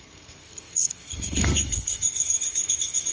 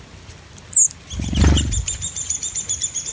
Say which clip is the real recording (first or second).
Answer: second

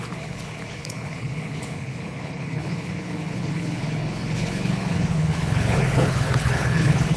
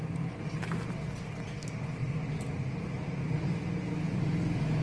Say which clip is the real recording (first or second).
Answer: second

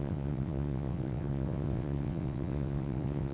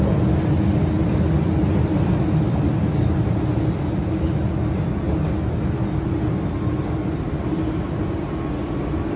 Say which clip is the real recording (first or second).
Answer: second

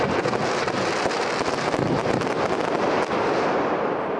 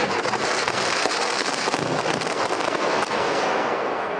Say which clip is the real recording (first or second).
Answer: first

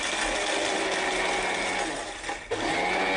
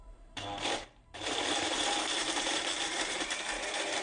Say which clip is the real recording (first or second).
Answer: first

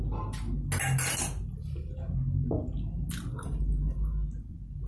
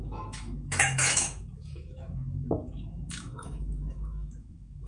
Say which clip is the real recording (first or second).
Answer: first